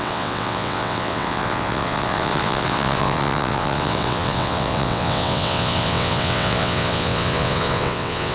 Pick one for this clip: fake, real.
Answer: fake